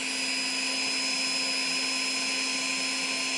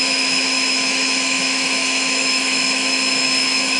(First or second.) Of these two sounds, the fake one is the second